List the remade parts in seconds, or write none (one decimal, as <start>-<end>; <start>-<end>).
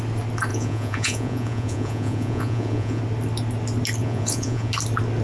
0.5-3.0; 4.0-4.7